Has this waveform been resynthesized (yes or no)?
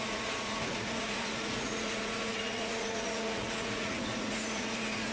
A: yes